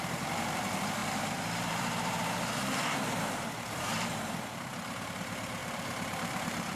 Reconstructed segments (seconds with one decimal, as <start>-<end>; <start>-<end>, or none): 0.0-6.8